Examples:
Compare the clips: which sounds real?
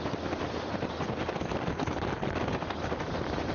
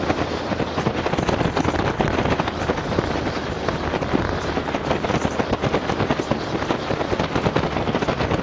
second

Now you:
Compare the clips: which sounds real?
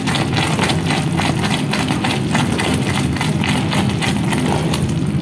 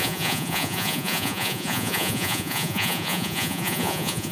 first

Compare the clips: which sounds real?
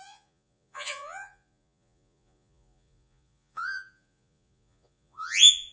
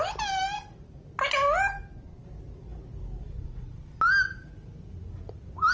second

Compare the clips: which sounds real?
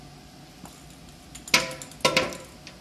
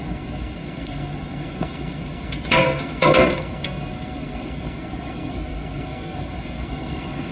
first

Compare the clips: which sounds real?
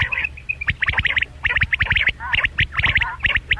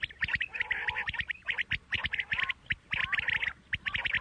second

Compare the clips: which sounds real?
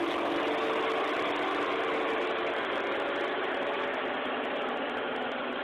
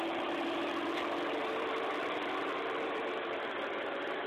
first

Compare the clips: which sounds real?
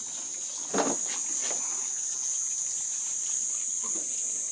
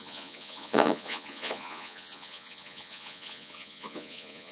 first